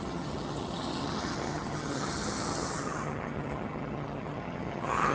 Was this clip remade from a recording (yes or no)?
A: yes